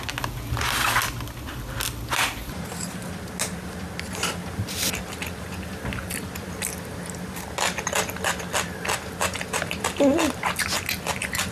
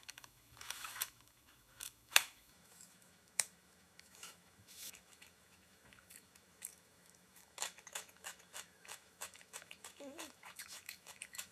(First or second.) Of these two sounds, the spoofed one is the second